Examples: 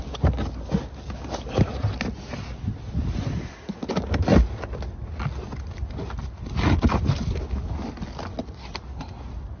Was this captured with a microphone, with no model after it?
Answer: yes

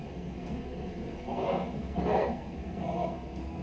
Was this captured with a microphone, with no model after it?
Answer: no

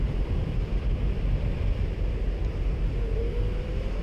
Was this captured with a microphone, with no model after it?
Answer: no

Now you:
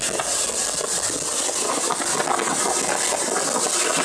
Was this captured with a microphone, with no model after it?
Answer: yes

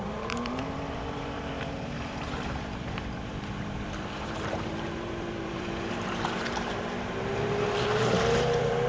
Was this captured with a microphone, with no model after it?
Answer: no